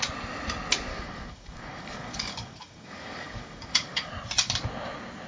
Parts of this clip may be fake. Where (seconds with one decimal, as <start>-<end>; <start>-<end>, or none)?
0.9-4.1